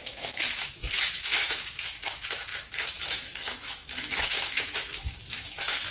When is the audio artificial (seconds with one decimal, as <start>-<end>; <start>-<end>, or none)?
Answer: 0.0-5.9